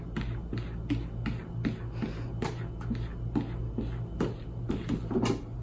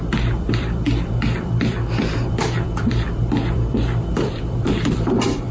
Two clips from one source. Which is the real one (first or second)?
first